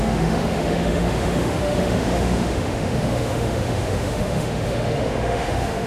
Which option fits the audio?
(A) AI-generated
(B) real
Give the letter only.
A